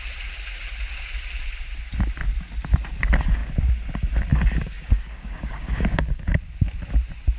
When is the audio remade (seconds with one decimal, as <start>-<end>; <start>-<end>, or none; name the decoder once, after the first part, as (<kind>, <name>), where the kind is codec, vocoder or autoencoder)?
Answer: 4.3-6.3 (codec, DAC)